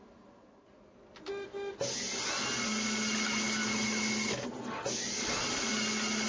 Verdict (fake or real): real